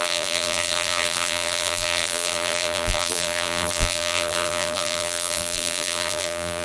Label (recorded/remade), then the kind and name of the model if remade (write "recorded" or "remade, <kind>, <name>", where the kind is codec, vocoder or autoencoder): remade, vocoder, BigVGAN v2